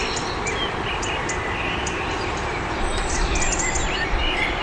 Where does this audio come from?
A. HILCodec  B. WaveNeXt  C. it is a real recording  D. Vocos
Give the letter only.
C